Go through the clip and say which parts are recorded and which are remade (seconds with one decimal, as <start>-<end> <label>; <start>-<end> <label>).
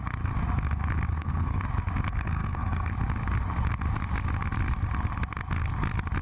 0.0-1.1 recorded; 1.1-1.6 remade; 1.6-2.1 recorded; 2.1-2.9 remade; 2.9-6.2 recorded